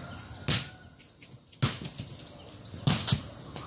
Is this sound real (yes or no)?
yes